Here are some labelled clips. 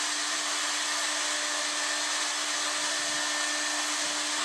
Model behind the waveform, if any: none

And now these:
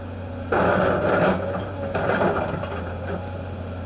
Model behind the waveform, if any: none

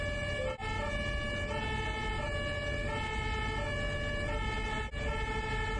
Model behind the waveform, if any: none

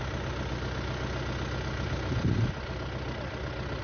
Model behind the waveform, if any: none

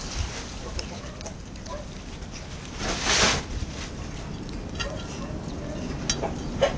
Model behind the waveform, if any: none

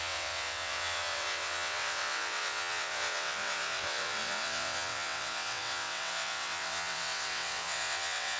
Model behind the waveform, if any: vocoder, WaveNeXt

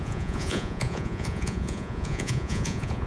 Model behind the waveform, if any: vocoder, Vocos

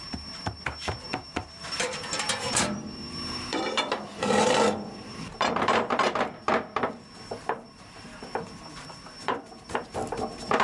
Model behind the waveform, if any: vocoder, BigVGAN v2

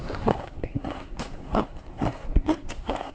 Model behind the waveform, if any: codec, SNAC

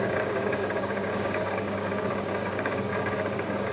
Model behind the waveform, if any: codec, DAC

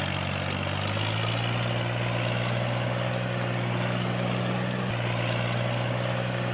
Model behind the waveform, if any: none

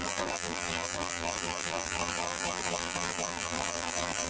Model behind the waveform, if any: vocoder, BigVGAN v2